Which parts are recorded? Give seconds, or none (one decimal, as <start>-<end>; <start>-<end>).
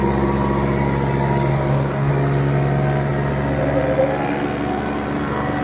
0.0-1.5; 2.1-5.6